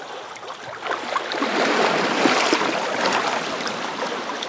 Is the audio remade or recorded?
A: recorded